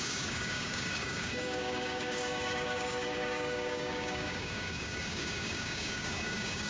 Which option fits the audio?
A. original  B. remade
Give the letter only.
B